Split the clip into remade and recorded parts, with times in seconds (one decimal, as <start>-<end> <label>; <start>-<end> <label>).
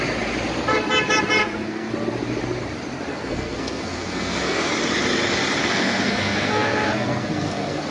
0.0-1.4 recorded; 1.4-1.9 remade; 1.9-3.1 recorded; 3.1-4.6 remade; 4.6-5.6 recorded; 5.6-7.9 remade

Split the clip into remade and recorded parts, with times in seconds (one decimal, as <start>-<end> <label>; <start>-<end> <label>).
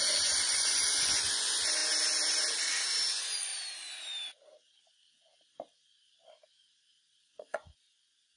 0.0-1.8 remade; 1.8-3.1 recorded; 3.1-3.5 remade; 3.5-7.2 recorded; 7.2-8.4 remade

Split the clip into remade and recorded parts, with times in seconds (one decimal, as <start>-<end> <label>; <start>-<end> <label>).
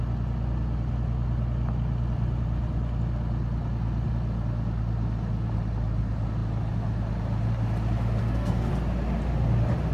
0.0-8.2 recorded; 8.2-8.7 remade; 8.7-9.9 recorded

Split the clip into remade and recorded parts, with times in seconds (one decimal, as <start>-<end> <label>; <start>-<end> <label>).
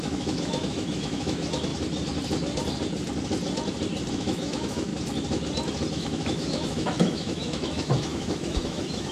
0.0-1.7 remade; 1.7-4.1 recorded; 4.1-4.9 remade; 4.9-5.9 recorded; 5.9-9.1 remade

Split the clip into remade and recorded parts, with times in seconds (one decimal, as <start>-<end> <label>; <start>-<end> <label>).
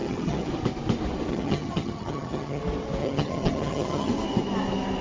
0.0-0.5 remade; 0.5-1.3 recorded; 1.3-2.6 remade; 2.6-3.0 recorded; 3.0-4.1 remade; 4.1-5.0 recorded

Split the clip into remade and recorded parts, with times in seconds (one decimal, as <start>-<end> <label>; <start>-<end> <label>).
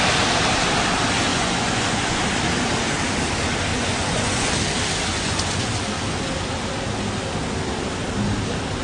0.0-1.3 recorded; 1.3-2.2 remade; 2.2-3.7 recorded; 3.7-4.5 remade; 4.5-5.1 recorded; 5.1-5.7 remade; 5.7-8.8 recorded